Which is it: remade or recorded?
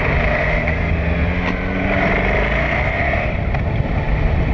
recorded